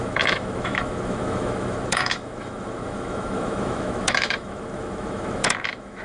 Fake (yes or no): yes